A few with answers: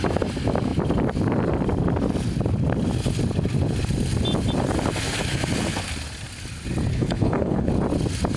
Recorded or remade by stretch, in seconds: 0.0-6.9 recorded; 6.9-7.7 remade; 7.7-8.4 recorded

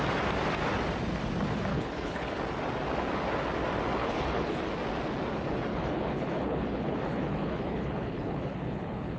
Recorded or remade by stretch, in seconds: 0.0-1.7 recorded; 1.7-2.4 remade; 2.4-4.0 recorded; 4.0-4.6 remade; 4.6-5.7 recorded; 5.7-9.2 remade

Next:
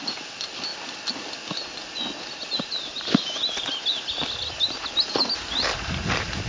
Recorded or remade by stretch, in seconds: 0.0-6.5 recorded